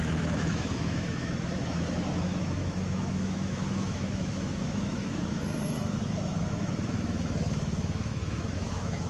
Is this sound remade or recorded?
remade